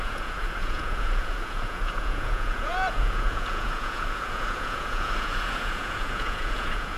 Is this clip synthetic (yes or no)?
yes